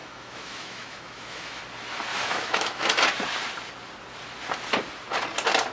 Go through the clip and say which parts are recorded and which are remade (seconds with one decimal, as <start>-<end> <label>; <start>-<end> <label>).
0.0-1.6 remade; 1.6-2.1 recorded; 2.1-2.9 remade; 2.9-5.7 recorded